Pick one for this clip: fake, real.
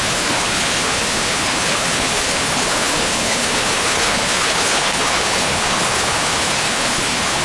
fake